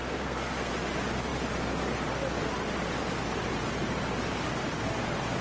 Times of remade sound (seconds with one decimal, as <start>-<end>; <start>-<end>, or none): 0.0-0.7

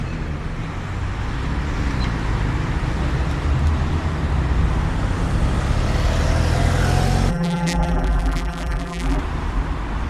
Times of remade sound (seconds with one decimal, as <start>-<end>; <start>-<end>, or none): 7.3-9.2

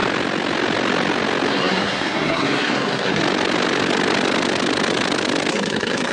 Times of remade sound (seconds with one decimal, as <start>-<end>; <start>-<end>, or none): 1.5-3.2; 5.5-6.1

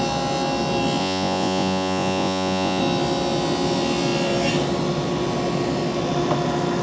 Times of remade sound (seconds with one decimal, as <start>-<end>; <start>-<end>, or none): 1.0-2.8

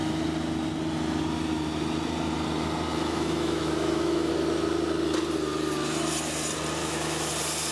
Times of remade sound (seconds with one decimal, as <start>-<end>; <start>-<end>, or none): 2.9-4.3; 6.8-7.3

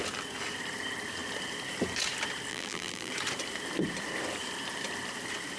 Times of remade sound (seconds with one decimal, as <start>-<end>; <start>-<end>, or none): 2.5-3.1

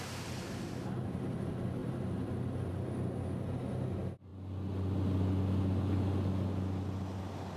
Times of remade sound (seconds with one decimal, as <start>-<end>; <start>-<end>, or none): none

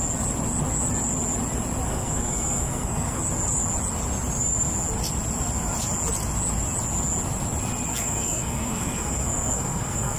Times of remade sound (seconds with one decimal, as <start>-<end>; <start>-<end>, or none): 1.9-3.2; 7.9-10.2